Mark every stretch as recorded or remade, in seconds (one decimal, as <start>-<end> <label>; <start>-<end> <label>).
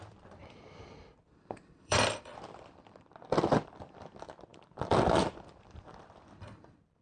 0.0-7.0 remade